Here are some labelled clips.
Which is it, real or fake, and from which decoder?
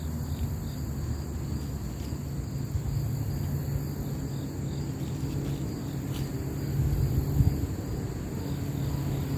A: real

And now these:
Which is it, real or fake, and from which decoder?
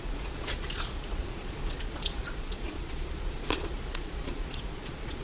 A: fake, vocoder, Vocos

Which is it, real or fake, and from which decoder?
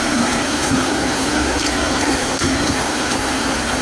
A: fake, codec, SNAC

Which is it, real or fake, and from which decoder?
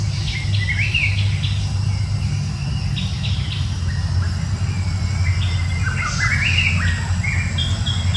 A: real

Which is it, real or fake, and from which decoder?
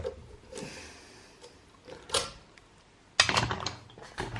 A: real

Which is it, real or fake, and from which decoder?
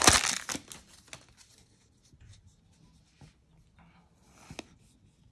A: real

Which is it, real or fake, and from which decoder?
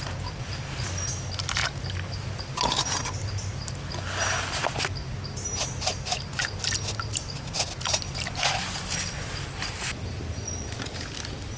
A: real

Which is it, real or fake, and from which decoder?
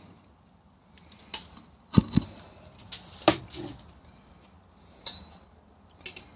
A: real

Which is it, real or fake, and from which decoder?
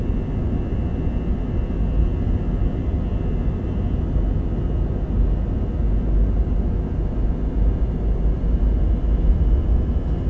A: real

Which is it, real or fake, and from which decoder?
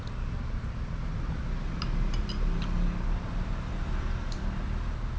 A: real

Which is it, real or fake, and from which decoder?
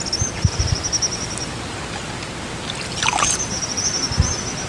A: real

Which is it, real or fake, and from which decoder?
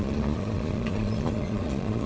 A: fake, vocoder, Vocos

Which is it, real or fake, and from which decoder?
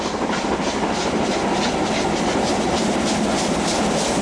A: real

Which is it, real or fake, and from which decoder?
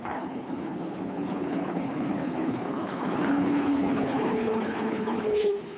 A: fake, codec, HILCodec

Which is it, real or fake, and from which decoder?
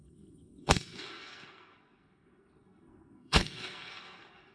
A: fake, codec, SNAC